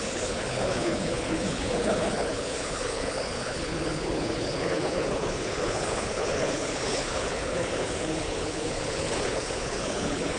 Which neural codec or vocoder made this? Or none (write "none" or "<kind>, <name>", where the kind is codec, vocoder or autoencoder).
codec, HILCodec